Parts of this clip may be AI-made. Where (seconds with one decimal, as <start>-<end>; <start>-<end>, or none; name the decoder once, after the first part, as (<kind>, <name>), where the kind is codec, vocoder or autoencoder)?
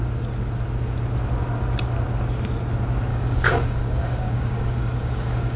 3.1-5.6 (codec, DAC)